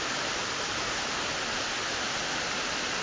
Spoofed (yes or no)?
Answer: no